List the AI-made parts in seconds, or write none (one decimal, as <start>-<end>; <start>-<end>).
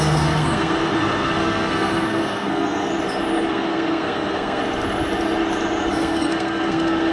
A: 0.0-2.9; 3.5-4.6; 5.9-7.1